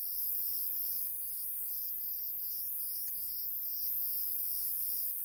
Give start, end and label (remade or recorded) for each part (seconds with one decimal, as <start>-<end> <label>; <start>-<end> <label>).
0.0-1.1 recorded; 1.1-4.2 remade; 4.2-5.2 recorded